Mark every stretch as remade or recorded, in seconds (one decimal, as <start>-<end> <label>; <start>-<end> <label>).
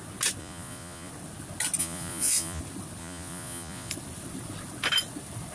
0.0-0.4 recorded; 0.4-1.1 remade; 1.1-1.8 recorded; 1.8-2.6 remade; 2.6-3.0 recorded; 3.0-3.9 remade; 3.9-5.5 recorded